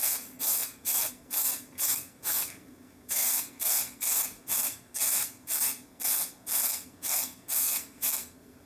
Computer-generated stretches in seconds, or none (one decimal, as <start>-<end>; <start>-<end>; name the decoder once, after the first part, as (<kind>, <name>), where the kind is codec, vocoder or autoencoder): 0.0-8.7 (codec, SNAC)